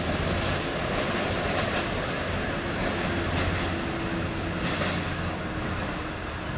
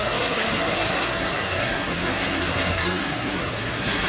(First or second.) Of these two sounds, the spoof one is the second